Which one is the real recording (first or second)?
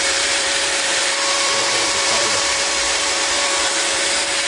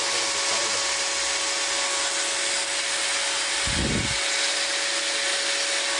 second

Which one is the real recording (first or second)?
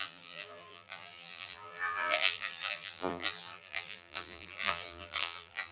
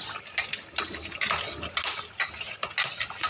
second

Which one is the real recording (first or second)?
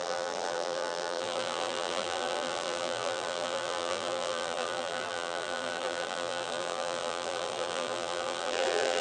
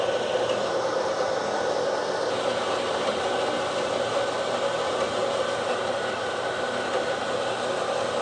second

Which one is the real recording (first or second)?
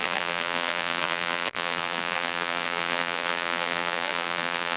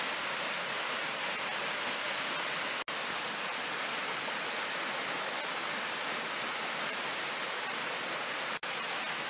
second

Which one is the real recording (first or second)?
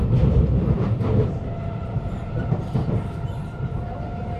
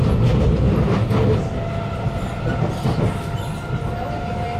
second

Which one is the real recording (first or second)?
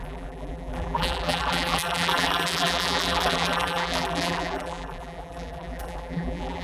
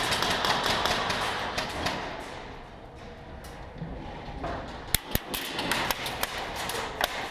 second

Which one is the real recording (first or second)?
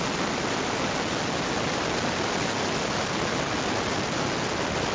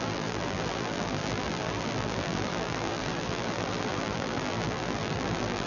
first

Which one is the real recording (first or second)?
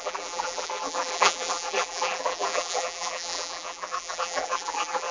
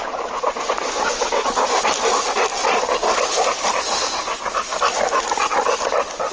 second